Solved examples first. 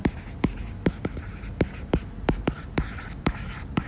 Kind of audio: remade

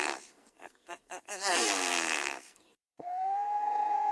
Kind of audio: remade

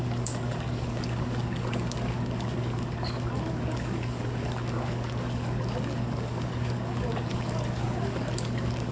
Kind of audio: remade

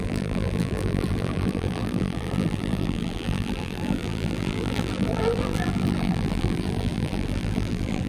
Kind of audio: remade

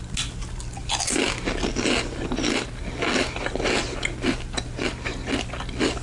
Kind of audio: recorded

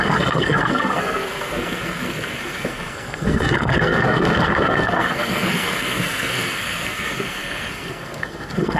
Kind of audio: remade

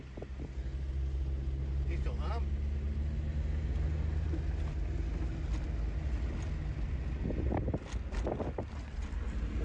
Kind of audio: recorded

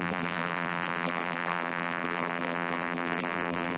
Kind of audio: remade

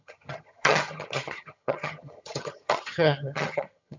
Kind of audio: remade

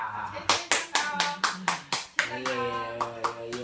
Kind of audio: recorded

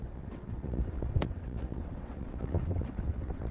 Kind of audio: remade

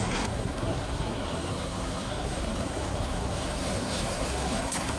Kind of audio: remade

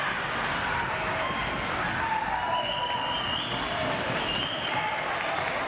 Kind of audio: recorded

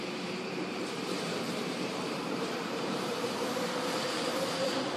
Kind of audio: remade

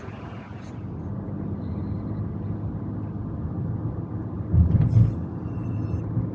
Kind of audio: recorded